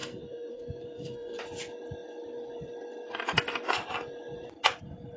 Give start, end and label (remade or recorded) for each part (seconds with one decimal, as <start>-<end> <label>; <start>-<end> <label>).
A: 0.0-1.4 remade; 1.4-5.2 recorded